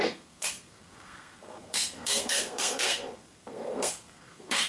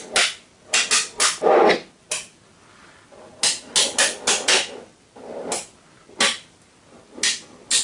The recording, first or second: second